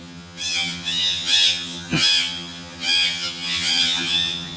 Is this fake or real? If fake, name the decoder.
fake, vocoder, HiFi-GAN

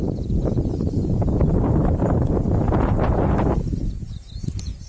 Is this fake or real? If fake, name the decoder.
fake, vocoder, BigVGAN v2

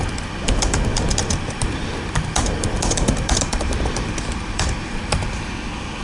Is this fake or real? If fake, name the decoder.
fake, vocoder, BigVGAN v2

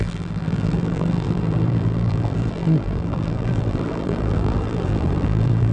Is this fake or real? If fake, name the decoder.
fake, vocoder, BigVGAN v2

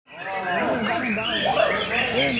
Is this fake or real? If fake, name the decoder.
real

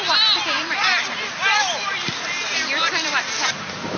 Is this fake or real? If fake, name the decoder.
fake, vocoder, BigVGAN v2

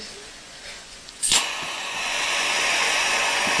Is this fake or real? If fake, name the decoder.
fake, vocoder, Vocos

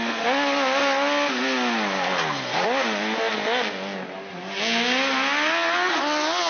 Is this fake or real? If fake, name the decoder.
real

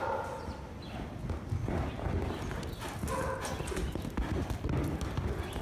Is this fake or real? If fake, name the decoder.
real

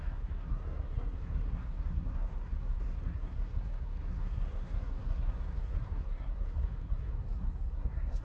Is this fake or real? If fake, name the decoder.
fake, codec, SNAC